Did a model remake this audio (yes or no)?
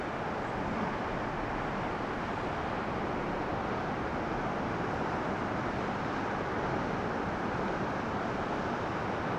no